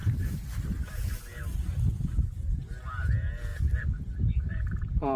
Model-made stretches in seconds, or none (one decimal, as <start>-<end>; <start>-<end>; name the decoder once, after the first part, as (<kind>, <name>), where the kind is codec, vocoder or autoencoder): 0.0-1.2 (vocoder, BigVGAN v2); 3.5-4.8